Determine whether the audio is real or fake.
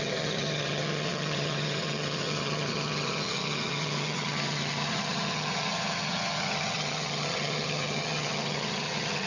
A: fake